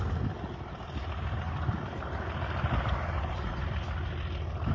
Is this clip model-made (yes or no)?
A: no